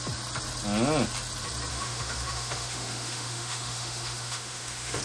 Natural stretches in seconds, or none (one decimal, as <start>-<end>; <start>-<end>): 0.0-1.7

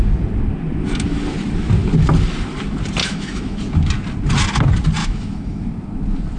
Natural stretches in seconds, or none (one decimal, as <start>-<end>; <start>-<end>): 0.0-3.0; 3.6-5.0; 5.6-6.4

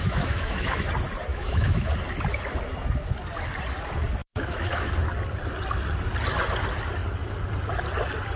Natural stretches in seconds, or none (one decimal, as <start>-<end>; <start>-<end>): 0.9-1.3; 1.9-4.2; 4.9-8.4